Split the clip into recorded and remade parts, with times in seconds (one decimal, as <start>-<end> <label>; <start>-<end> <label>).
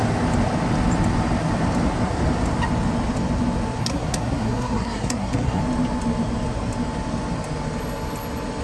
0.0-3.8 recorded; 3.8-5.6 remade; 5.6-8.6 recorded